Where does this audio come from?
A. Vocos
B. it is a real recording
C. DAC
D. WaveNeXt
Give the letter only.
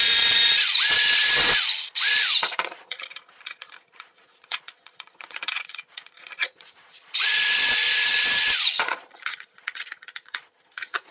A